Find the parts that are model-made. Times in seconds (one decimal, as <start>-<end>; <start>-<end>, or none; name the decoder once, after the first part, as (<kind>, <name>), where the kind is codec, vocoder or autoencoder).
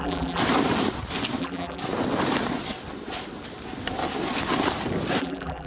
0.0-0.4 (vocoder, BigVGAN v2); 1.4-1.8; 5.2-5.7